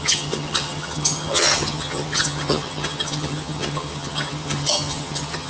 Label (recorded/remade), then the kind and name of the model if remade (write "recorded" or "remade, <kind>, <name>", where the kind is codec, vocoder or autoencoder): remade, vocoder, HiFi-GAN